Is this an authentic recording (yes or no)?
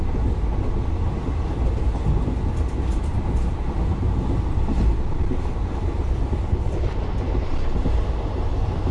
yes